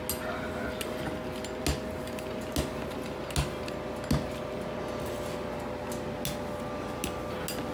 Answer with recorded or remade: recorded